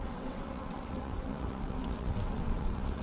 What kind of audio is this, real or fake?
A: fake